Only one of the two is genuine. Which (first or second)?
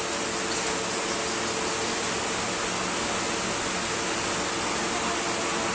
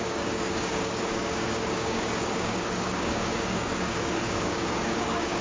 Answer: first